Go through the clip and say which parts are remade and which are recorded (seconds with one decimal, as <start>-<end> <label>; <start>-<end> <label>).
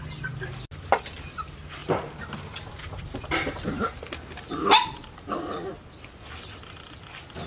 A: 0.0-7.5 recorded